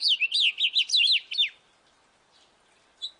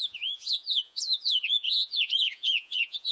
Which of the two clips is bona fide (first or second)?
first